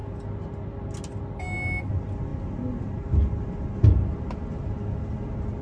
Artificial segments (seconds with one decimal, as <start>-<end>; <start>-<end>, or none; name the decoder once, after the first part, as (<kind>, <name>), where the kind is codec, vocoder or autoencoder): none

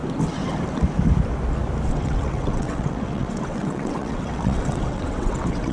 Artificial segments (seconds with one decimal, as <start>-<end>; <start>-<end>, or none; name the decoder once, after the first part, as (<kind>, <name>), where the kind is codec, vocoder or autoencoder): 1.9-5.7 (vocoder, WaveNeXt)

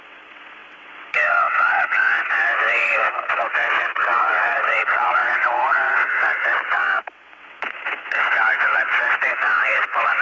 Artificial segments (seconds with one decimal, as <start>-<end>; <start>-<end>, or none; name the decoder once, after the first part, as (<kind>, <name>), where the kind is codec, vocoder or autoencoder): 0.0-10.2 (vocoder, WaveNeXt)

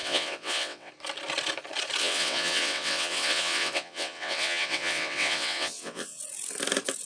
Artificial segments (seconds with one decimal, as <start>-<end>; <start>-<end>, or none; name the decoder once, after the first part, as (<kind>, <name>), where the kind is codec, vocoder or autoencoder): 0.0-0.9 (vocoder, WaveNeXt); 2.0-6.2

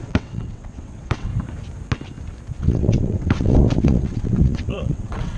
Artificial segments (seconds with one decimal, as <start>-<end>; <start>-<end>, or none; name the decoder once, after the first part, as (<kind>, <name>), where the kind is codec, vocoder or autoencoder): 0.0-1.3 (vocoder, WaveNeXt); 2.6-5.4